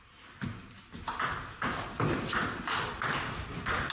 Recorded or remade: recorded